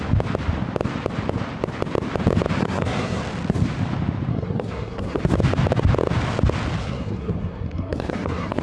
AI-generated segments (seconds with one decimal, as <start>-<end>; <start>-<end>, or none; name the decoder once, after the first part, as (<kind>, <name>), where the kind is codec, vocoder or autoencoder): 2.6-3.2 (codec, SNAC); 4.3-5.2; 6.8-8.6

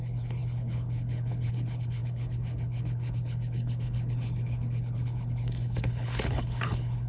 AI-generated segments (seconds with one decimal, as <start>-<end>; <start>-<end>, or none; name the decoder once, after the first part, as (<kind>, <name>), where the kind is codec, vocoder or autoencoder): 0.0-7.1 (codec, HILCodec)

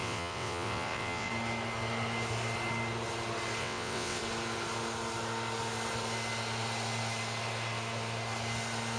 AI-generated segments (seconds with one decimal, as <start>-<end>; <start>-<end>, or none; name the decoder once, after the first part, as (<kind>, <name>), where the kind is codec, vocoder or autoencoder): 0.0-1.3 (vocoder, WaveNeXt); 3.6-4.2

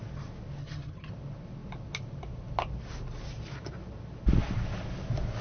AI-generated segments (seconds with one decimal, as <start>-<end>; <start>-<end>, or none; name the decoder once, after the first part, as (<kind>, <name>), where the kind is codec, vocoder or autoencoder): 0.6-1.1 (vocoder, HiFi-GAN)

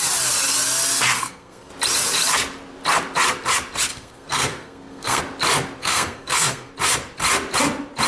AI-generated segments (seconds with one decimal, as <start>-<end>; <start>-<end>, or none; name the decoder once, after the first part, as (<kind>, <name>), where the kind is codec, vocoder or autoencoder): 1.2-1.7 (codec, SNAC); 3.9-5.2; 5.8-6.7

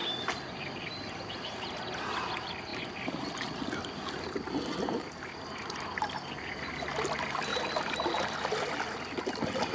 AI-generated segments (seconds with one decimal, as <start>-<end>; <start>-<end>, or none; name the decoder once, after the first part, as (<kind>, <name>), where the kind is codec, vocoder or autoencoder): none